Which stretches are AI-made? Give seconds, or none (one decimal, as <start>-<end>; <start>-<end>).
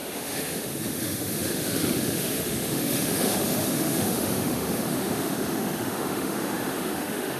0.0-7.4